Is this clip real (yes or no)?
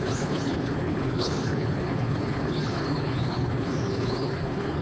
no